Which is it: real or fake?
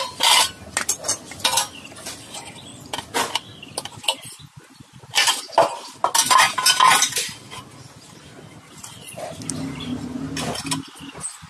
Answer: real